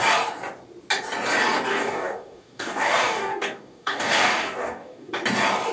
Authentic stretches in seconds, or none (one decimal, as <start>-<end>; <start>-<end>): 0.0-1.7; 5.1-5.7